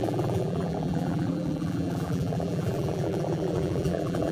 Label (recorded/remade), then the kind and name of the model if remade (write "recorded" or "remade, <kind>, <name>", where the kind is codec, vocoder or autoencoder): remade, vocoder, BigVGAN v2